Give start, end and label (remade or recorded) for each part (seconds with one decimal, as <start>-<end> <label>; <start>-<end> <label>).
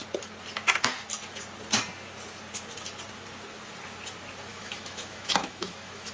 0.0-4.5 recorded; 4.5-6.1 remade